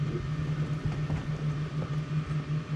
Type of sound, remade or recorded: recorded